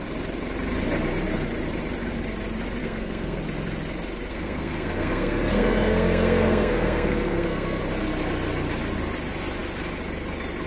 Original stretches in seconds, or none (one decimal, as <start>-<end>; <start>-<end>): 0.0-2.8; 3.4-4.3; 7.8-10.7